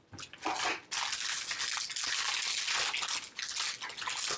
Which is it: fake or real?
real